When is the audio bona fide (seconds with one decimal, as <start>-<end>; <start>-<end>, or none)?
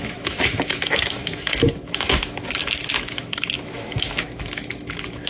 none